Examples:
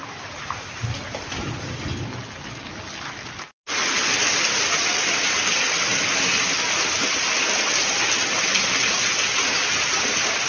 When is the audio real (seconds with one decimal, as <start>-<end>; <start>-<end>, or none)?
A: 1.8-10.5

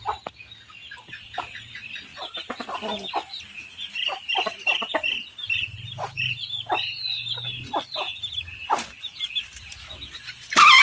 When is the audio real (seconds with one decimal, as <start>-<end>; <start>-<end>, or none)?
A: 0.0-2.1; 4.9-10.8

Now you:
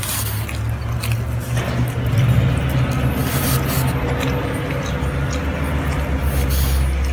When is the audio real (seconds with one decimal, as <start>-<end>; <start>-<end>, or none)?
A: 0.0-7.1

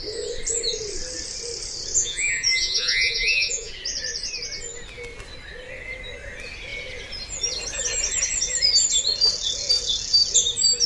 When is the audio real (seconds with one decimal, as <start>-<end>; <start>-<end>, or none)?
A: 0.0-2.0; 3.7-10.9

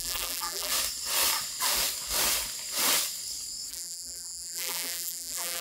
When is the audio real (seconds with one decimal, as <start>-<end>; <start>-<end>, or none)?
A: 0.7-3.7